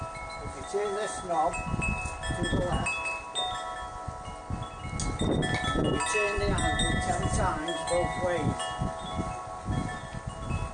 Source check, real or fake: real